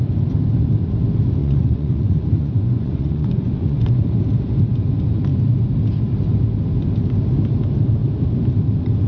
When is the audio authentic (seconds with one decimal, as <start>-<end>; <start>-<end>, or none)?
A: 0.0-1.4; 4.1-9.1